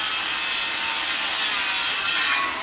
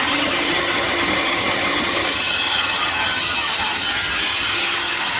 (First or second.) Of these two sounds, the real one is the first